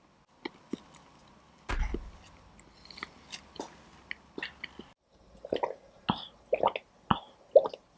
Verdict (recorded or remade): recorded